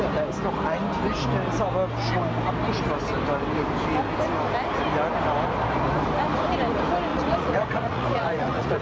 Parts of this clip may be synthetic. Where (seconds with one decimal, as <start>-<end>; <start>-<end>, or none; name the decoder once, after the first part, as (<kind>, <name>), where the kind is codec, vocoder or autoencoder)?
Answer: 7.1-8.8 (vocoder, Vocos)